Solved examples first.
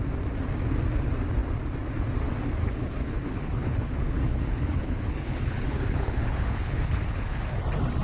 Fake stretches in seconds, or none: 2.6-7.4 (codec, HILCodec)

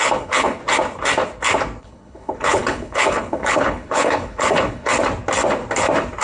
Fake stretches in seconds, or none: 0.0-0.6 (codec, HILCodec); 1.8-4.9

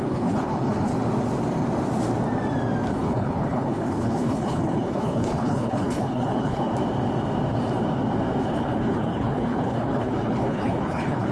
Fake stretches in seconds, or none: 0.0-0.9 (codec, HILCodec); 3.0-6.7; 8.4-11.3

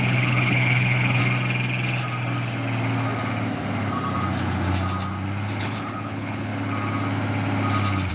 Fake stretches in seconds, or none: 0.0-1.2 (codec, HILCodec); 5.6-6.5